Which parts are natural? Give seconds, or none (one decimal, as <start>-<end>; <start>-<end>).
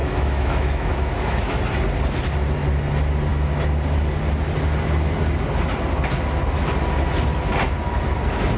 1.6-8.6